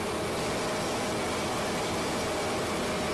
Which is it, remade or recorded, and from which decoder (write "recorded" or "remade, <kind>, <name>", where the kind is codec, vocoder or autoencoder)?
recorded